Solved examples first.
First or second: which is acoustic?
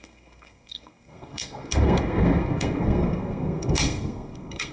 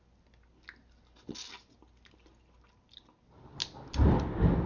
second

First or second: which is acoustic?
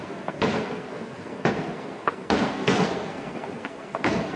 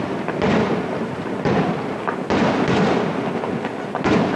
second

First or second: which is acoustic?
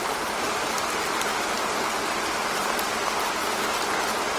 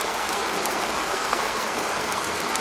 first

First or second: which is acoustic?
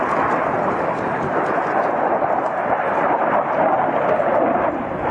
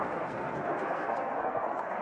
first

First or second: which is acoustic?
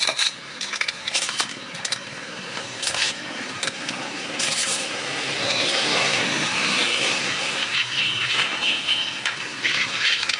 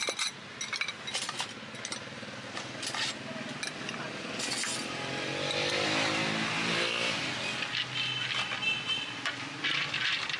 second